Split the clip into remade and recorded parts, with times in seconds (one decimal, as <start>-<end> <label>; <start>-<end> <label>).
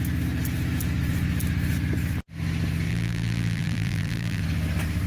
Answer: 0.0-2.9 recorded; 2.9-4.4 remade; 4.4-5.1 recorded